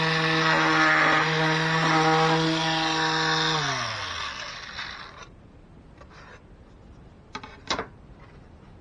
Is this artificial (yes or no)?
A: no